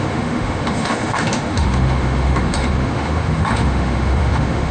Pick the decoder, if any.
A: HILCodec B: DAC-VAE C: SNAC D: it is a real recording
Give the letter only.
B